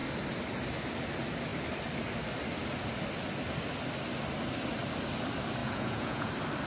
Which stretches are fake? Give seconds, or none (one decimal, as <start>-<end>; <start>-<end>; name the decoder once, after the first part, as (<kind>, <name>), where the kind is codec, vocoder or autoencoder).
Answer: 5.6-6.3 (vocoder, Vocos)